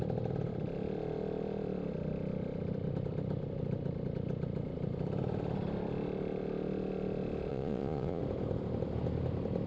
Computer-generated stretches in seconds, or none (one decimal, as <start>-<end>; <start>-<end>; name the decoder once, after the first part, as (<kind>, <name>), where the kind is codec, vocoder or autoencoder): 7.5-8.2 (vocoder, Vocos)